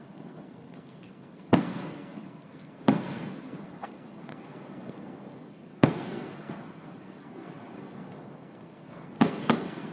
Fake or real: fake